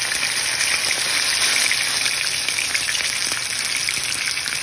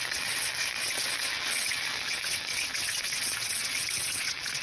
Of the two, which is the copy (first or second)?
second